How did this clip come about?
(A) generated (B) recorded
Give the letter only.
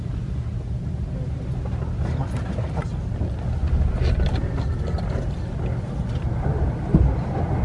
B